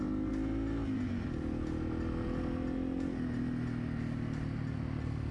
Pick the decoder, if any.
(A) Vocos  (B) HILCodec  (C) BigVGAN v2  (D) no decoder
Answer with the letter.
D